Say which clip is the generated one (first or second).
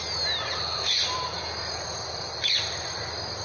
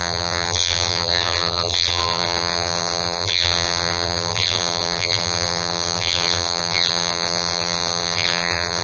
second